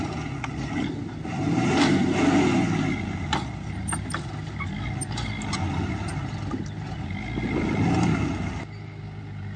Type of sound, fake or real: real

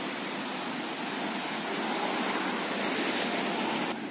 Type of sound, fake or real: real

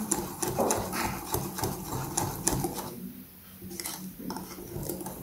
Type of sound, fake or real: real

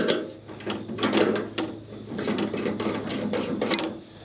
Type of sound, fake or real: real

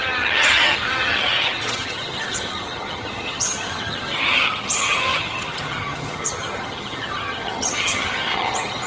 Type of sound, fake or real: fake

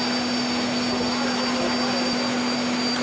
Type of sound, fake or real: real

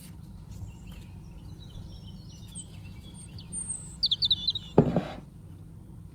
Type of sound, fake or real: real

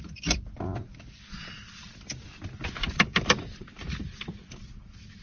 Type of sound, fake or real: real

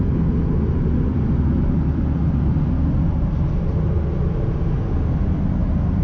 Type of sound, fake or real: real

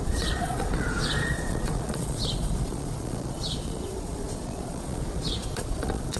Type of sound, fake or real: fake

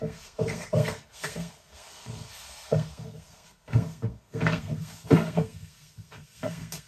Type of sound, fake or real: fake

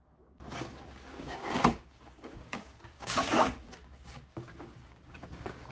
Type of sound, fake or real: fake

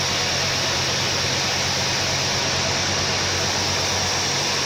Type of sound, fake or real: real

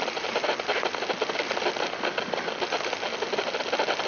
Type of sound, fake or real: real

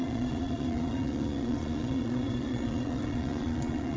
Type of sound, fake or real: fake